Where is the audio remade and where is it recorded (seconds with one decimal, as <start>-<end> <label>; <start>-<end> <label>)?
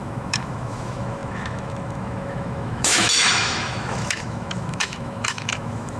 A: 0.0-6.0 remade